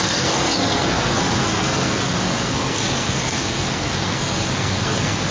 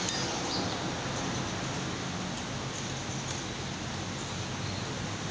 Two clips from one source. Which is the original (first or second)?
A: second